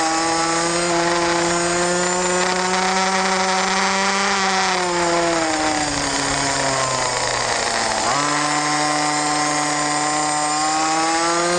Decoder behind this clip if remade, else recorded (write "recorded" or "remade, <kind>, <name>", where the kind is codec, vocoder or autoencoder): recorded